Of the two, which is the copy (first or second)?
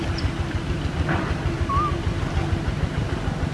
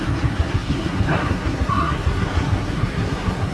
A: second